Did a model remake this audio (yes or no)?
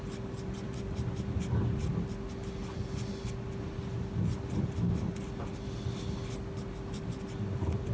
no